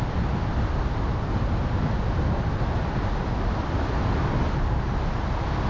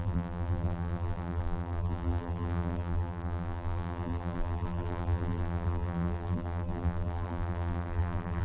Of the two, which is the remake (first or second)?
second